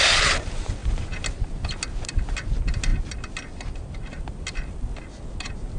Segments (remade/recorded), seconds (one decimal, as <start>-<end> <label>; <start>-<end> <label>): 0.0-5.8 recorded